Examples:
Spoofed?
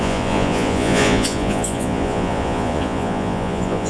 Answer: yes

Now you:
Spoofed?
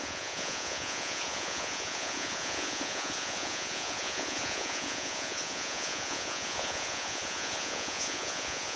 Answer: yes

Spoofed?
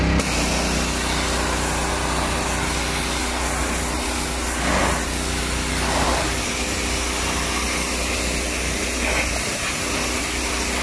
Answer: no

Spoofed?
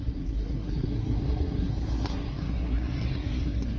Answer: yes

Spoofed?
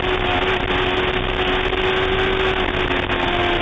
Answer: no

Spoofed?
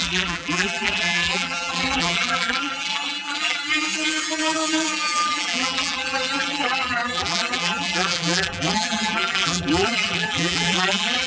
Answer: yes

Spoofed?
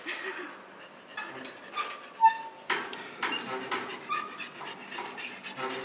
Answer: no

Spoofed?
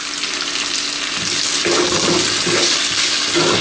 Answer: no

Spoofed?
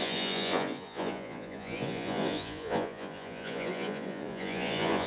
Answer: yes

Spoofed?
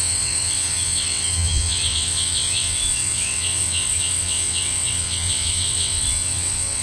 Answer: yes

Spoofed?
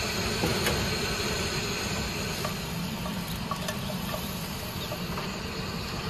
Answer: no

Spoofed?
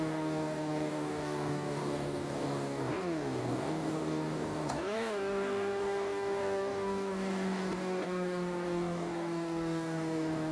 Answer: yes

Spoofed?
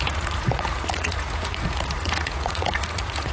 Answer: yes